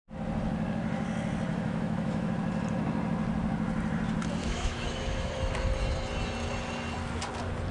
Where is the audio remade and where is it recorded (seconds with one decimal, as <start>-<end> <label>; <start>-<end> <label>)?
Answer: 0.0-1.5 recorded; 1.5-2.3 remade; 2.3-4.4 recorded; 4.4-5.3 remade; 5.3-7.7 recorded